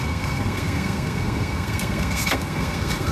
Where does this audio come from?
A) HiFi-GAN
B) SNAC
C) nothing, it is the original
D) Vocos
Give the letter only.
B